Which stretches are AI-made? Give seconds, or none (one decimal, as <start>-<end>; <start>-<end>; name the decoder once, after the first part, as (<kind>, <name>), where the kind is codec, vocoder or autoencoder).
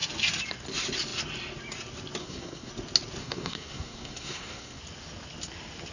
2.2-2.7 (codec, SNAC); 3.2-4.8